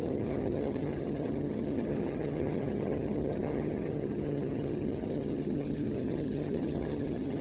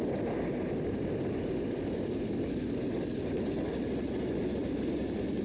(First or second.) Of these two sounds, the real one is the second